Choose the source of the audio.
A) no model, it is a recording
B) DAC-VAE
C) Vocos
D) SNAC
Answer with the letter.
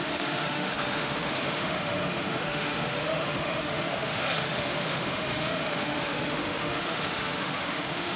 B